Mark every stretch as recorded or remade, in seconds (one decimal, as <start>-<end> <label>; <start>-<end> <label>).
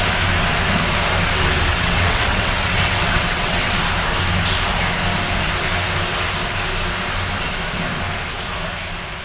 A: 0.0-1.7 recorded; 1.7-3.7 remade; 3.7-9.2 recorded